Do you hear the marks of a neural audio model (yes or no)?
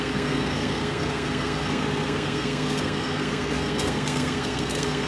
yes